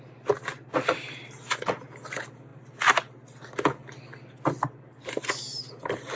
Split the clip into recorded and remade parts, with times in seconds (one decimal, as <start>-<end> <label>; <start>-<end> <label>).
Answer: 0.0-6.2 recorded